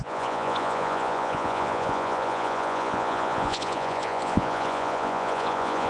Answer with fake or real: fake